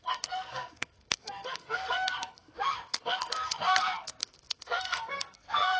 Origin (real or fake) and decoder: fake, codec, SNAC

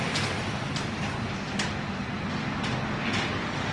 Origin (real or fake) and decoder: real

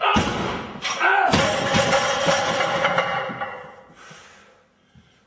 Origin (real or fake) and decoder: real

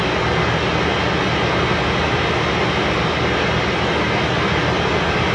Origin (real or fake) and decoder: real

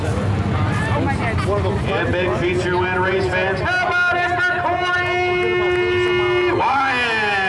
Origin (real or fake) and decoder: real